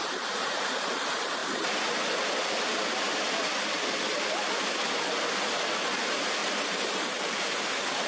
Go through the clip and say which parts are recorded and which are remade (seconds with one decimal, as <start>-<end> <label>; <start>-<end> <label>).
0.0-6.4 recorded; 6.4-7.5 remade; 7.5-8.1 recorded